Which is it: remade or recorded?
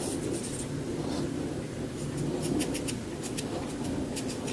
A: recorded